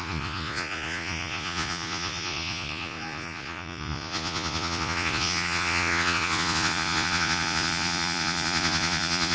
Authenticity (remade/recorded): remade